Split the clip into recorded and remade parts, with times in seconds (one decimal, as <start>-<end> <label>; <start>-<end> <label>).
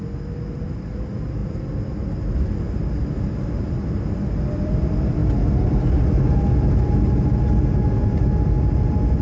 0.0-9.2 recorded